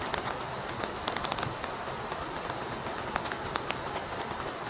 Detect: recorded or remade recorded